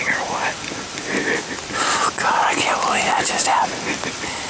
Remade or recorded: recorded